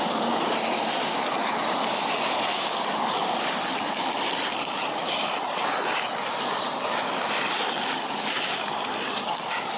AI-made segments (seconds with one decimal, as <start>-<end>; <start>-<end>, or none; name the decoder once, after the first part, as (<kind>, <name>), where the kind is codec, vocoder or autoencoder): 3.2-3.8 (vocoder, BigVGAN v2)